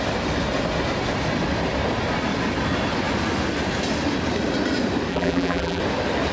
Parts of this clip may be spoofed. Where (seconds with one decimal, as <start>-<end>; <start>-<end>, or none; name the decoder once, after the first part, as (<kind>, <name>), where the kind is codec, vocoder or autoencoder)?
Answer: 5.1-5.8 (vocoder, BigVGAN v2)